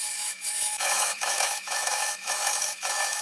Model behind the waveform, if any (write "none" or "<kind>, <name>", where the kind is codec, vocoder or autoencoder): autoencoder, DAC-VAE